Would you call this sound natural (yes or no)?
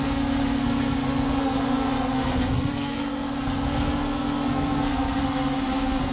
no